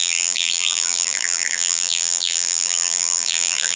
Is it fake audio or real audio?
fake